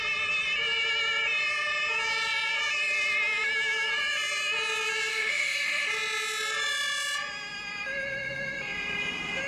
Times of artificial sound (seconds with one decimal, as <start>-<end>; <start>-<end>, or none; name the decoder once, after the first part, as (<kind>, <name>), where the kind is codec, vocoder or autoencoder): 5.1-5.9 (autoencoder, DAC-VAE)